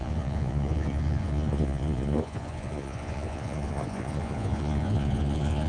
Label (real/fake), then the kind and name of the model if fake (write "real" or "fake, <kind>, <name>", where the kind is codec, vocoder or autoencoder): fake, vocoder, Vocos